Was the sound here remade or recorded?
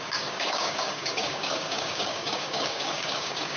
remade